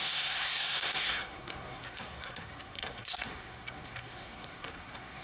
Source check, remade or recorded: remade